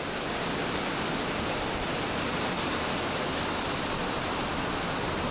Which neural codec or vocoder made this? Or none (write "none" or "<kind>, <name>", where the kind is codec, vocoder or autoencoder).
vocoder, BigVGAN v2